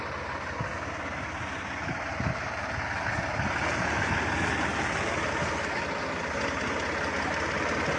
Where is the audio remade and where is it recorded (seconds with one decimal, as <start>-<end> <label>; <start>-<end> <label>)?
0.0-8.0 recorded